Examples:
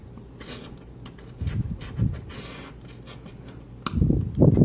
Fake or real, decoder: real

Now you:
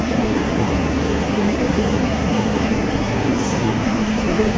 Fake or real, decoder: fake, codec, SNAC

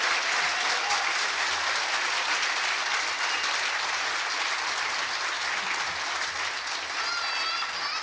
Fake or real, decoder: real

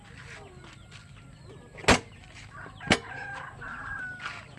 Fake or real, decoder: real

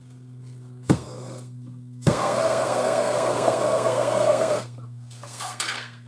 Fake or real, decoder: fake, codec, SNAC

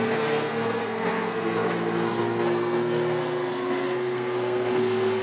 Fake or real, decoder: fake, codec, SNAC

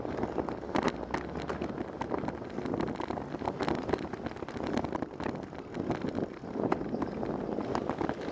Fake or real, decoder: real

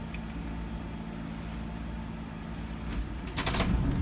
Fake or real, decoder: real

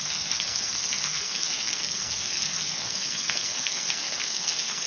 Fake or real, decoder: fake, codec, SNAC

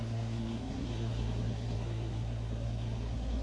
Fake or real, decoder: fake, codec, SNAC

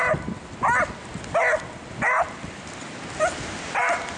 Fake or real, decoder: real